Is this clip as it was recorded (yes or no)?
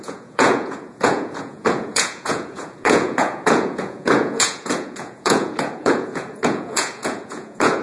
no